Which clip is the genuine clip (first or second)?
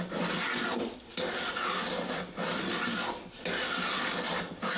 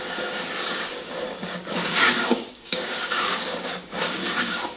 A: first